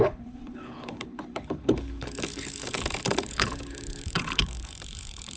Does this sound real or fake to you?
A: fake